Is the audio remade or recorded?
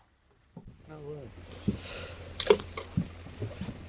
recorded